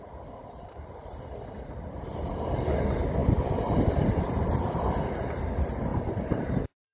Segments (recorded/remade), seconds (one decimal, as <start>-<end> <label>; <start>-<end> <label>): 0.0-5.9 remade; 5.9-6.5 recorded; 6.5-6.9 remade